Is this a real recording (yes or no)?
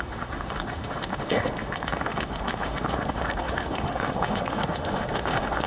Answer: no